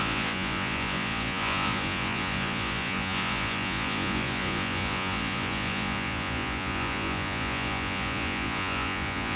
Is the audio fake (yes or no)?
yes